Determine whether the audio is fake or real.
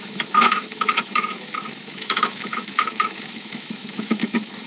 fake